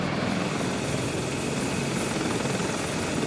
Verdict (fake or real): real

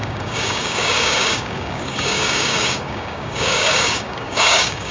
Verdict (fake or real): fake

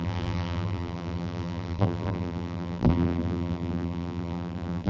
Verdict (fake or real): fake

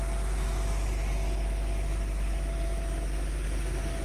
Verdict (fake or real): real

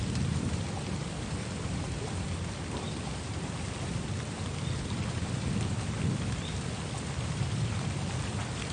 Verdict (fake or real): fake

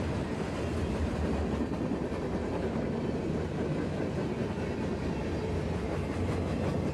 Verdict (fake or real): real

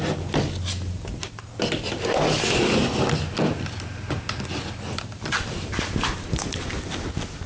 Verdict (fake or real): real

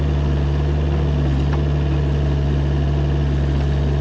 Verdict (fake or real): real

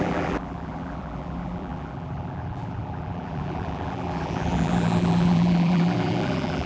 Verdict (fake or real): fake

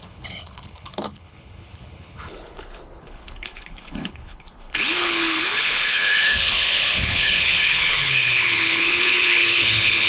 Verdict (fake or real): fake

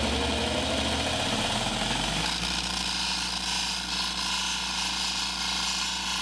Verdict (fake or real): real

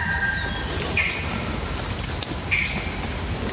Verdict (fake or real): real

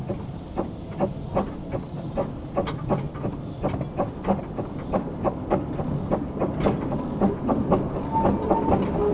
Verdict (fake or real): real